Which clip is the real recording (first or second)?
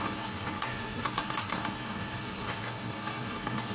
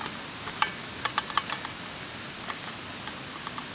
second